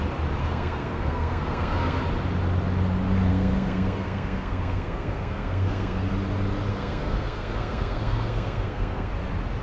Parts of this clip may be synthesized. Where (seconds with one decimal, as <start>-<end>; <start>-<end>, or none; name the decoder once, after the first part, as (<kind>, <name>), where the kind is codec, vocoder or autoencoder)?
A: 0.4-2.0 (codec, SNAC); 3.3-6.1; 6.7-9.1